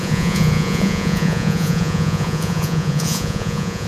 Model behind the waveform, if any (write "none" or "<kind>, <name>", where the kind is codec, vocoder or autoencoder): vocoder, Vocos